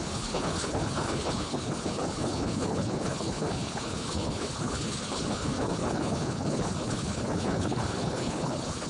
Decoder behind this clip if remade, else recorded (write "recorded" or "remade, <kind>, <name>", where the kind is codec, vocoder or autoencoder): remade, codec, HILCodec